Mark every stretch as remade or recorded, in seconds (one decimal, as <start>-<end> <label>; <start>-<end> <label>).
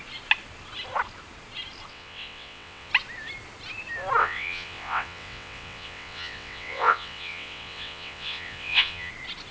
0.0-1.9 recorded; 1.9-2.9 remade; 2.9-4.2 recorded; 4.2-9.1 remade; 9.1-9.5 recorded